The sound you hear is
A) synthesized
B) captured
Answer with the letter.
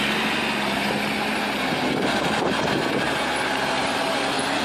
B